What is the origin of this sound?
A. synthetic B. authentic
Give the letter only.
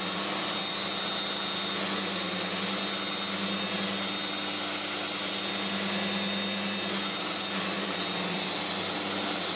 B